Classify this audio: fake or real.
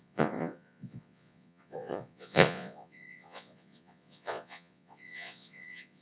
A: fake